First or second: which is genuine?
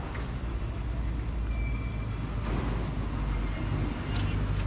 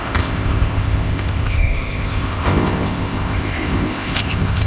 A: first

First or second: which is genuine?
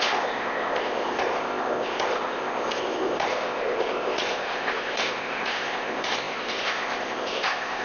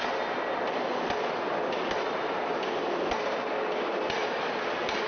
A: second